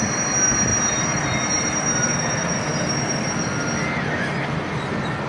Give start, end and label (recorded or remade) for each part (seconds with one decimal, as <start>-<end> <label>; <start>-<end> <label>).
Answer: 0.0-5.3 recorded